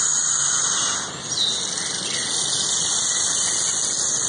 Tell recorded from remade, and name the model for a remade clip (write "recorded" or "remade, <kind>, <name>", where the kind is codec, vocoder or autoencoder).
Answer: recorded